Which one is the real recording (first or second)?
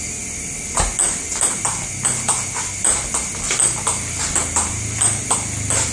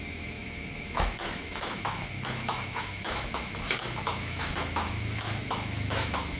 first